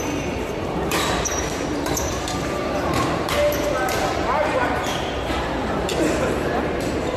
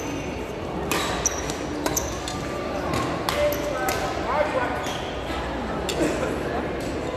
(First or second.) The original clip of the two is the second